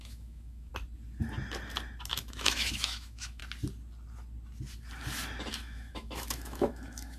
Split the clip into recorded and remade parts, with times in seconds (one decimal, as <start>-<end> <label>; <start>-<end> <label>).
0.0-0.7 remade; 0.7-2.1 recorded; 2.1-3.4 remade; 3.4-5.5 recorded; 5.5-7.2 remade

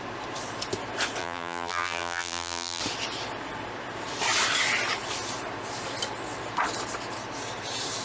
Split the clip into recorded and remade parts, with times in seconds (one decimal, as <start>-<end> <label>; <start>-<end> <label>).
0.0-1.2 recorded; 1.2-2.8 remade; 2.8-8.0 recorded